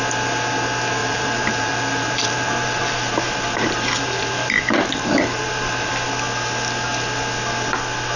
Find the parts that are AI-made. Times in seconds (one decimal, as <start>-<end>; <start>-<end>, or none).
1.0-5.9